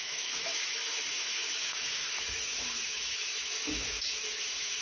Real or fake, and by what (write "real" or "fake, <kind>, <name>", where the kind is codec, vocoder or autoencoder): fake, autoencoder, DAC-VAE